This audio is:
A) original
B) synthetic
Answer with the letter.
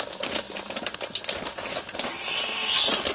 A